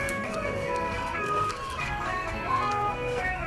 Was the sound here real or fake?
fake